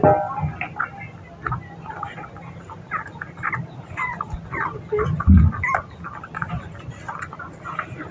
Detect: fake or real real